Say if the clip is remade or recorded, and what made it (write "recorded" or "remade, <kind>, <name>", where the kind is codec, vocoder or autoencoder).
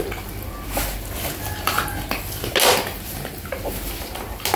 recorded